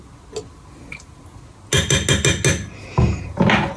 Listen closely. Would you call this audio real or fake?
real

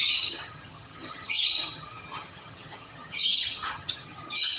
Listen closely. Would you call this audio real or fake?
fake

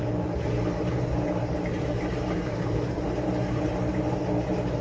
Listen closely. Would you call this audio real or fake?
fake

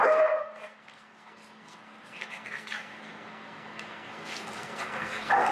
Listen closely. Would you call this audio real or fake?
fake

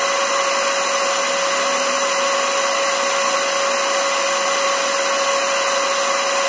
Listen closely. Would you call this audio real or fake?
real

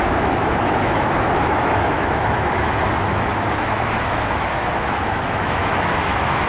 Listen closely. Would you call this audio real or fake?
fake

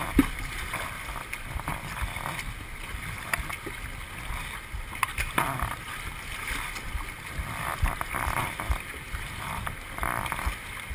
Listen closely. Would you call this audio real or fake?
real